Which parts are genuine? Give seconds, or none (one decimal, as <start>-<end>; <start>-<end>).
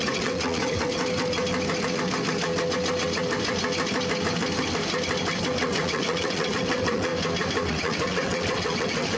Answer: 1.0-5.6; 7.1-7.7